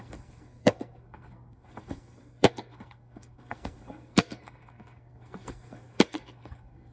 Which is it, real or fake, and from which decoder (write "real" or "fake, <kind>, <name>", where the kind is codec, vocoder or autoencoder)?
fake, codec, SNAC